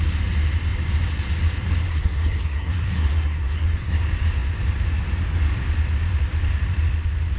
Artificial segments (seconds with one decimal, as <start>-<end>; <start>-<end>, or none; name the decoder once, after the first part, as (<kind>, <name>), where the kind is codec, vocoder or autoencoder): 1.9-4.0 (codec, SNAC)